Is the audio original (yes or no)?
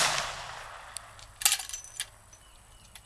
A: yes